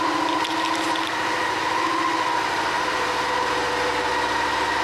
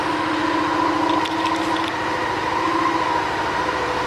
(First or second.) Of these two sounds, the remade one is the second